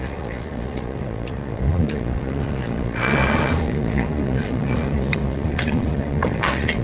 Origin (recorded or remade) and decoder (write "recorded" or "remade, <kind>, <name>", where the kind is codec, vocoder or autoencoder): remade, vocoder, Vocos